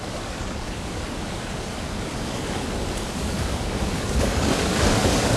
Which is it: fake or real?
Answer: fake